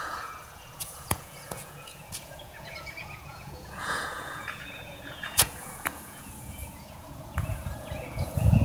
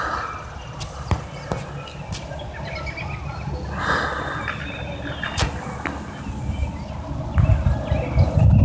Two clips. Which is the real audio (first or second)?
second